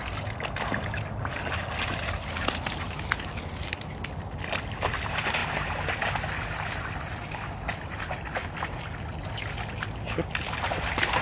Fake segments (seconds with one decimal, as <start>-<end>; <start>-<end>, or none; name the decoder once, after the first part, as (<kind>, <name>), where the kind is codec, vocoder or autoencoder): none